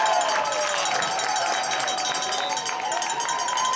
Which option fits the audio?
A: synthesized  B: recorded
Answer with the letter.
B